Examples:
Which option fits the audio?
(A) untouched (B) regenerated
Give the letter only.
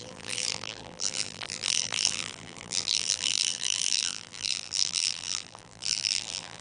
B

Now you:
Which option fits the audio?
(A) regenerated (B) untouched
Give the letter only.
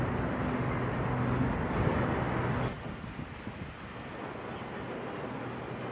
B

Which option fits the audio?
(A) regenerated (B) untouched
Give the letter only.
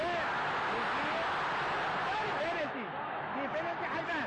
B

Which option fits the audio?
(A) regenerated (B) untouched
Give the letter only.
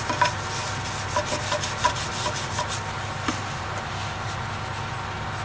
B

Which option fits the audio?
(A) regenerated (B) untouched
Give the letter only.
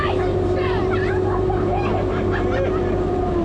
A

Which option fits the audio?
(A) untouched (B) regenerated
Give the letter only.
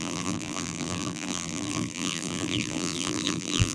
B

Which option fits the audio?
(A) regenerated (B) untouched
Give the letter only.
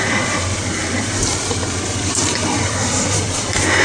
B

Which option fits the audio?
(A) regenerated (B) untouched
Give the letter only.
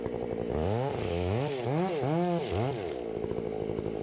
B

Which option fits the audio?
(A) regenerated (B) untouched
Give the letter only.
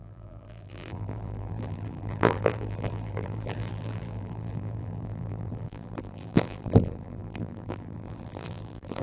A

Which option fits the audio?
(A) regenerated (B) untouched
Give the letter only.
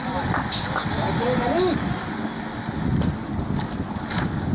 B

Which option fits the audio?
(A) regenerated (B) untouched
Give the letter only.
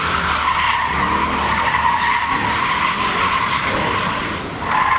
A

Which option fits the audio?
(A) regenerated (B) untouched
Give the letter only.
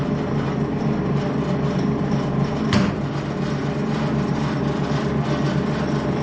B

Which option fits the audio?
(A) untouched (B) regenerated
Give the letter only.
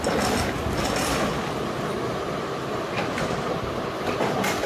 B